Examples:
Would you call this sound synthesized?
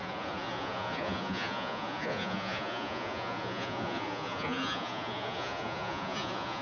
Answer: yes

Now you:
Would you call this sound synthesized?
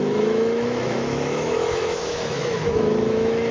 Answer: yes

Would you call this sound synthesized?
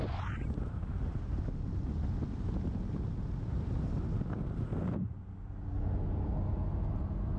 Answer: no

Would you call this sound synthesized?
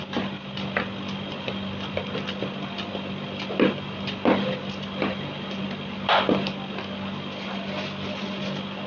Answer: no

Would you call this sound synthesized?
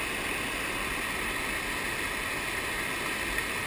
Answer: no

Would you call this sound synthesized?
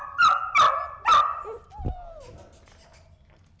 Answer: no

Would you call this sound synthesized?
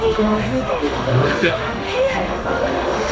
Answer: yes